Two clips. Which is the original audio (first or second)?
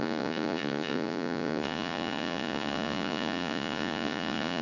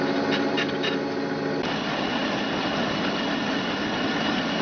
second